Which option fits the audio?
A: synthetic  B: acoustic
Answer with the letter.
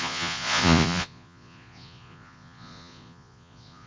A